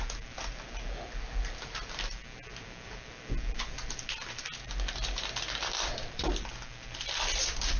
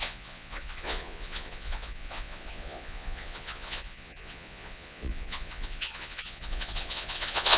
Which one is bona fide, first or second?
first